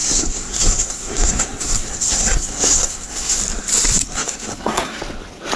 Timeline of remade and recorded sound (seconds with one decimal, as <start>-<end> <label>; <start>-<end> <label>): 0.0-3.4 remade; 3.4-4.0 recorded; 4.0-5.0 remade; 5.0-5.6 recorded